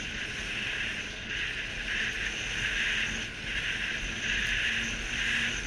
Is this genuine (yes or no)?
yes